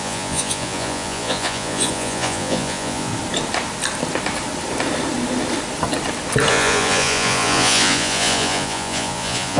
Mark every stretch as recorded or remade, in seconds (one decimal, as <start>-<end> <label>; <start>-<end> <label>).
0.0-3.1 remade; 3.1-6.5 recorded; 6.5-9.6 remade

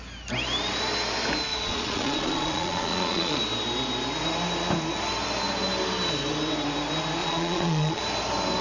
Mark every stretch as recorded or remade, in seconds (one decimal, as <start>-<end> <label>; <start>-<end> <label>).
0.0-1.5 recorded; 1.5-3.4 remade; 3.4-7.2 recorded; 7.2-8.0 remade; 8.0-8.6 recorded

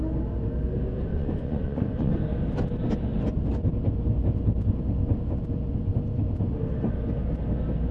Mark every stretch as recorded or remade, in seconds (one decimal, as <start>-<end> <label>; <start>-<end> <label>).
0.0-1.1 recorded; 1.1-2.2 remade; 2.2-7.9 recorded

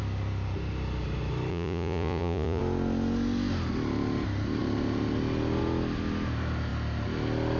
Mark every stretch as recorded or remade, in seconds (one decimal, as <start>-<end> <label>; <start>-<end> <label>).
0.0-1.5 recorded; 1.5-2.6 remade; 2.6-7.6 recorded

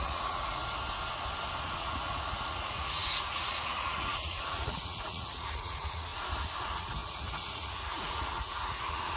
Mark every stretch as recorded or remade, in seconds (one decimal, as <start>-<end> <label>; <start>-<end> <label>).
0.0-0.6 remade; 0.6-1.6 recorded; 1.6-6.1 remade; 6.1-6.6 recorded; 6.6-9.2 remade

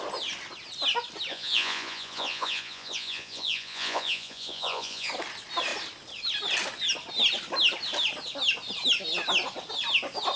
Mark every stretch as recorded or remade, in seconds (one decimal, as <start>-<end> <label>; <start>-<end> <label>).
0.0-1.3 recorded; 1.3-5.1 remade; 5.1-10.4 recorded

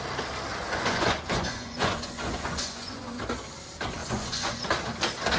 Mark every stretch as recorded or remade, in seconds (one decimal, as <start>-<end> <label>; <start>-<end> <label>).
0.0-0.5 recorded; 0.5-3.2 remade; 3.2-4.0 recorded; 4.0-4.7 remade; 4.7-5.4 recorded